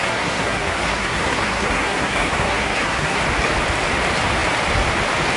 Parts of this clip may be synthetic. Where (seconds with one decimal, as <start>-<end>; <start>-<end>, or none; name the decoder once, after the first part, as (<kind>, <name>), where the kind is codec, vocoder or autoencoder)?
0.0-3.2 (codec, SNAC)